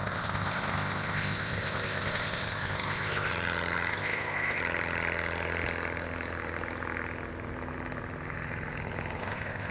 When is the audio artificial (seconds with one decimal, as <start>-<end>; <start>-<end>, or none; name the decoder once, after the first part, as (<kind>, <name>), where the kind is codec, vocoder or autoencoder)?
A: 0.0-3.3 (codec, ZipCodec); 3.9-4.6; 9.2-9.7